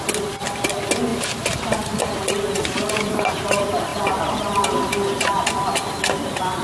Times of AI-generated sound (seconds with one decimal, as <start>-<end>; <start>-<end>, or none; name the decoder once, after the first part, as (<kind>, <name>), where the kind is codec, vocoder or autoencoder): none